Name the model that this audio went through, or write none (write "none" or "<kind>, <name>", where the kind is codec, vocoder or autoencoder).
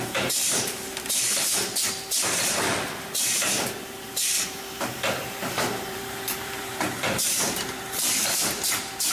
vocoder, BigVGAN v2